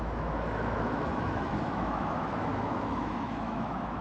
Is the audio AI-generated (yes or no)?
yes